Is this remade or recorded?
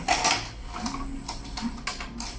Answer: recorded